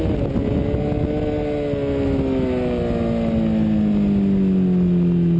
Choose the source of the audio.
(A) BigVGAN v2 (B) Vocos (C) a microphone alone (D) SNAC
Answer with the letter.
C